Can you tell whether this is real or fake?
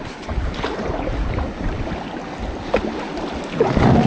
real